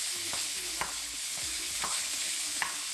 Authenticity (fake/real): fake